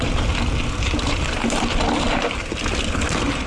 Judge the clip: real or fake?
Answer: real